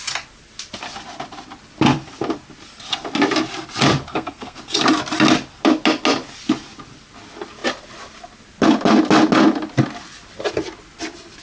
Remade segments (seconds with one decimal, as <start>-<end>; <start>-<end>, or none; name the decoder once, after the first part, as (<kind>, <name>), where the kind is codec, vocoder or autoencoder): 4.1-4.6 (codec, SNAC)